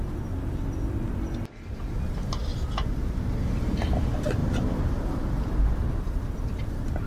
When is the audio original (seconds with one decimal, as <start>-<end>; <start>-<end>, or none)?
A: 0.0-2.5; 3.2-7.1